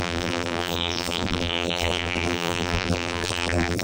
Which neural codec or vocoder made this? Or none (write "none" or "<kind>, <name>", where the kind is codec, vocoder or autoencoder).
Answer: vocoder, BigVGAN v2